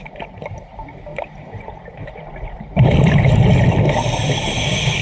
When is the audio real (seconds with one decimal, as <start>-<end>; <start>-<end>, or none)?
0.0-5.0